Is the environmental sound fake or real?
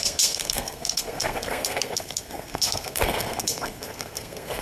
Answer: fake